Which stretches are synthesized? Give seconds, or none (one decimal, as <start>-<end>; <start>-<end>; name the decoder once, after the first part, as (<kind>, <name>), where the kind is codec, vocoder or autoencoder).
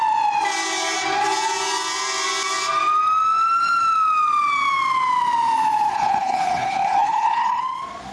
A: 5.9-7.6 (codec, HILCodec)